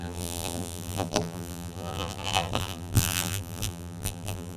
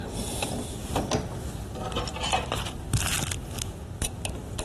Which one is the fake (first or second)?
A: first